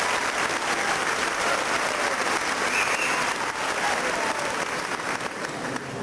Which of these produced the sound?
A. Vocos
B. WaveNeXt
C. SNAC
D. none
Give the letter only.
D